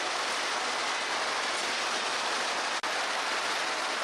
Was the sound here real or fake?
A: real